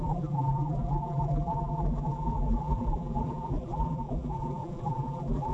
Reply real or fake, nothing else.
fake